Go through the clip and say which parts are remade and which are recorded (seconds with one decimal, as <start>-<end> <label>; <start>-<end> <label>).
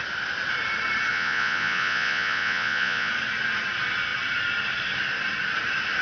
0.0-1.1 recorded; 1.1-3.1 remade; 3.1-6.0 recorded